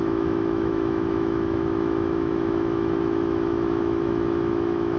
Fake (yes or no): yes